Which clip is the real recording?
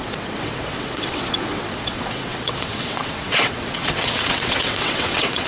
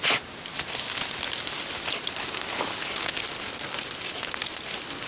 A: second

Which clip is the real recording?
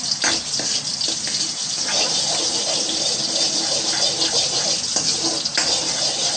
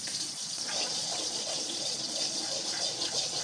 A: first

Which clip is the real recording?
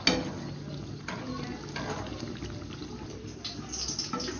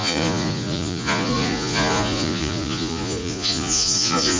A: first